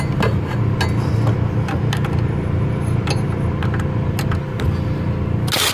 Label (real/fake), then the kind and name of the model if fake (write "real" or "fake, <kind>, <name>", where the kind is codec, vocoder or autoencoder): real